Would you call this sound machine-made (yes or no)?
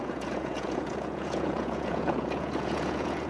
yes